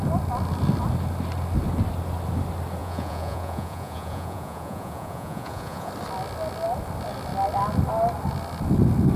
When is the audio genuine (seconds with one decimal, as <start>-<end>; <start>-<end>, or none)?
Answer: 0.0-2.8; 5.9-9.2